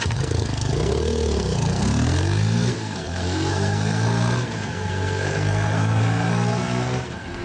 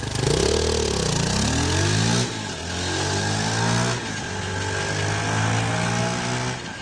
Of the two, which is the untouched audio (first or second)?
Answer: second